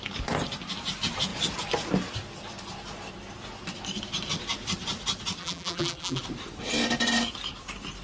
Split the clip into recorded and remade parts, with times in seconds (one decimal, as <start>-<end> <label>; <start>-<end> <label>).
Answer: 0.0-5.4 recorded; 5.4-6.2 remade; 6.2-8.0 recorded